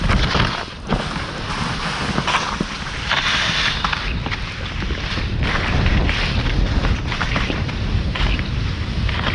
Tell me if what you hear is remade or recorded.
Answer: recorded